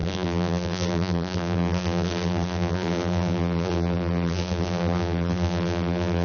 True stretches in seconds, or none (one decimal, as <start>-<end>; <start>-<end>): none

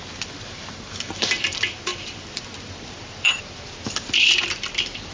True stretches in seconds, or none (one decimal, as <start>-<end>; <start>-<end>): 0.0-1.9

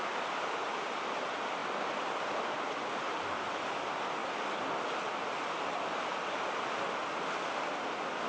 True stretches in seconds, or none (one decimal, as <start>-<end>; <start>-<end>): 0.0-1.6; 2.7-4.2; 6.6-7.0; 7.6-8.3